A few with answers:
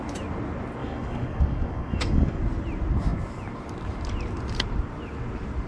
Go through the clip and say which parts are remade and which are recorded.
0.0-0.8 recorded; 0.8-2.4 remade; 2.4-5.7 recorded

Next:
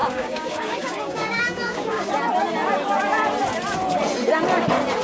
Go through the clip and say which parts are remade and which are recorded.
0.0-2.1 remade; 2.1-5.0 recorded

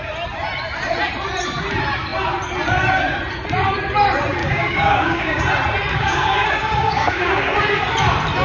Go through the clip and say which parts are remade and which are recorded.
0.0-4.4 recorded; 4.4-5.4 remade; 5.4-5.9 recorded; 5.9-7.5 remade; 7.5-8.4 recorded

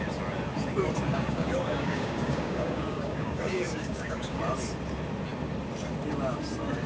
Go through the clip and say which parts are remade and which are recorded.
0.0-1.1 recorded; 1.1-4.4 remade; 4.4-6.9 recorded

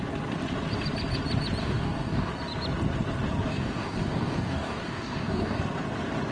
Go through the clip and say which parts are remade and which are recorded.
0.0-1.6 recorded; 1.6-2.3 remade; 2.3-3.5 recorded; 3.5-5.6 remade; 5.6-6.3 recorded